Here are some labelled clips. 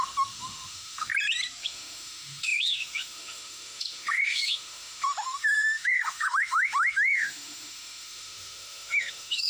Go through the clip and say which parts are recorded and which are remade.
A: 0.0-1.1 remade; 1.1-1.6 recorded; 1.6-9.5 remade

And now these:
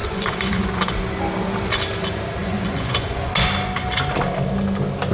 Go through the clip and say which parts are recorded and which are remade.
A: 0.0-0.7 remade; 0.7-2.4 recorded; 2.4-3.3 remade; 3.3-5.1 recorded

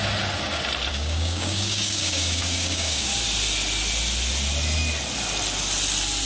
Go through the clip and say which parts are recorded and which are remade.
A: 0.0-0.9 recorded; 0.9-3.1 remade; 3.1-6.3 recorded

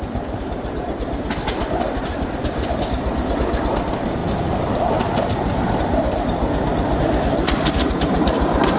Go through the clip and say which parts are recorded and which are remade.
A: 0.0-8.8 recorded

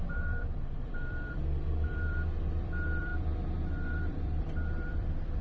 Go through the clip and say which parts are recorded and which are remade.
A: 0.0-5.4 remade

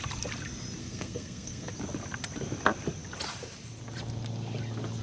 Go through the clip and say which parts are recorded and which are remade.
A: 0.0-0.8 recorded; 0.8-1.7 remade; 1.7-5.0 recorded